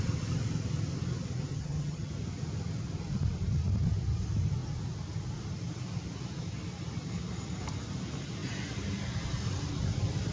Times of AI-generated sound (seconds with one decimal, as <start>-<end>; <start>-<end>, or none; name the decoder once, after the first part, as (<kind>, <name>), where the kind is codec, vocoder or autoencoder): 1.5-2.1 (vocoder, HiFi-GAN)